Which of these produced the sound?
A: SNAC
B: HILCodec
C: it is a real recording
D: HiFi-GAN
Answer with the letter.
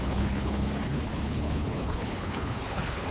B